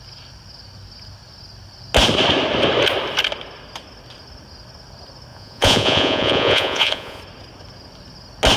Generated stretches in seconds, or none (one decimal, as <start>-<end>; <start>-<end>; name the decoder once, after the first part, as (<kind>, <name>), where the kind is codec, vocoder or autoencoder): 5.3-7.2 (vocoder, Vocos)